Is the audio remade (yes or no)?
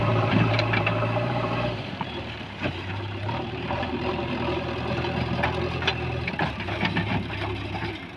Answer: yes